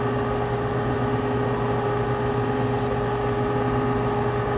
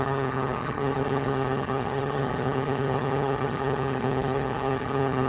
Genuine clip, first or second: first